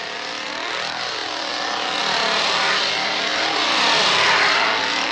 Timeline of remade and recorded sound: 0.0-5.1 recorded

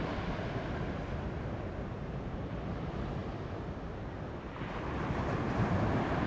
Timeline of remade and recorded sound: 0.0-6.3 recorded

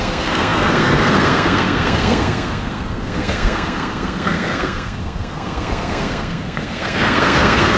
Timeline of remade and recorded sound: 0.0-7.8 remade

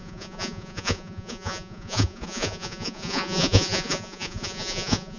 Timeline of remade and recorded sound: 0.0-5.2 remade

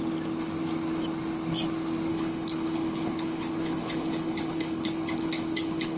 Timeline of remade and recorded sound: 0.0-2.1 recorded; 2.1-6.0 remade

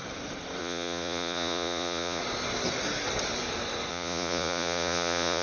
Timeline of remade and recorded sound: 0.0-0.6 recorded; 0.6-2.2 remade; 2.2-3.9 recorded; 3.9-5.4 remade